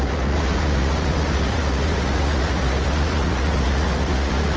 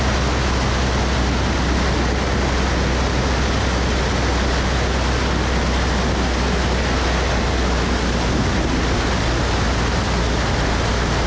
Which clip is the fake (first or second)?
first